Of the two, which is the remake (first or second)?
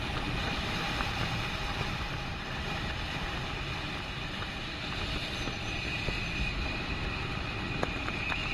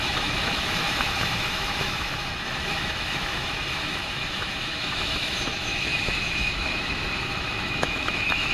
second